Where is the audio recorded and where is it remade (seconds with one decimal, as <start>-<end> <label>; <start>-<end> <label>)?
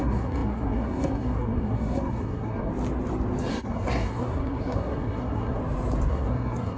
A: 0.0-2.7 remade; 2.7-3.5 recorded; 3.5-5.6 remade; 5.6-6.1 recorded; 6.1-6.8 remade